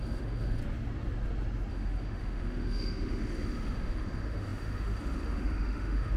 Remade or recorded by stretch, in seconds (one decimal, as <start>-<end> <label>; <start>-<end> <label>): 0.0-0.6 remade; 0.6-1.7 recorded; 1.7-6.2 remade